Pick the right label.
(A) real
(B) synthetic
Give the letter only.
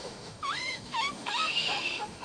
B